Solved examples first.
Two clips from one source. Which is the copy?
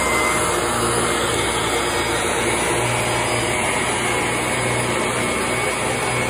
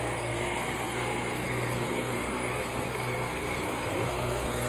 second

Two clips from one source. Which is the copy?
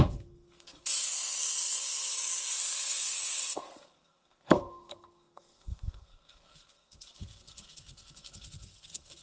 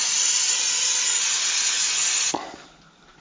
first